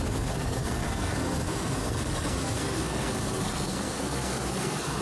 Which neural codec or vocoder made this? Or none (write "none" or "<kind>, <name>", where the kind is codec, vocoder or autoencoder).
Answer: codec, SNAC